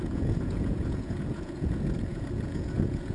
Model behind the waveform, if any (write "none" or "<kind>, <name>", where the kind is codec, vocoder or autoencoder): vocoder, Vocos